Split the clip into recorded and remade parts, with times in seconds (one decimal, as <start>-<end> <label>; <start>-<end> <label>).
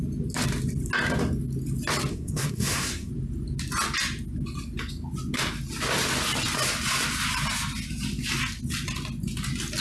0.0-2.1 recorded; 2.1-3.1 remade; 3.1-9.8 recorded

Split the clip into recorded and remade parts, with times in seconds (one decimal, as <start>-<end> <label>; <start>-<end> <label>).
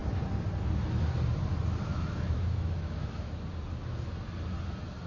0.0-1.9 recorded; 1.9-3.3 remade; 3.3-5.1 recorded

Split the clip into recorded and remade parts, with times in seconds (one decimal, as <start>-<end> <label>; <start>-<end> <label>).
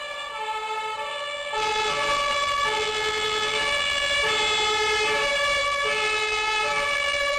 0.0-1.1 recorded; 1.1-4.1 remade; 4.1-5.6 recorded; 5.6-7.4 remade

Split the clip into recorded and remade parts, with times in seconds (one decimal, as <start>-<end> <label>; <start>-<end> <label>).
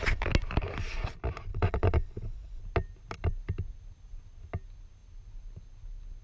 0.0-1.5 recorded; 1.5-2.6 remade; 2.6-6.2 recorded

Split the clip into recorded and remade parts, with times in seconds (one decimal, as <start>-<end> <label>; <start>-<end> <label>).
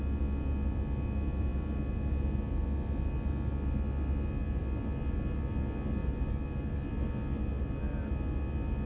0.0-8.9 recorded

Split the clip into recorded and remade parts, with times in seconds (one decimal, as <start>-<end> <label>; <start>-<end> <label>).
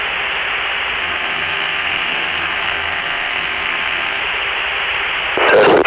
0.0-1.0 recorded; 1.0-4.2 remade; 4.2-5.9 recorded